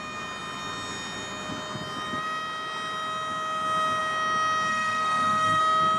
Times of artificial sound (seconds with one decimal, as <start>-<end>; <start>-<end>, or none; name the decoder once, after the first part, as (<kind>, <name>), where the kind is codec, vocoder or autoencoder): 4.7-5.6 (codec, SNAC)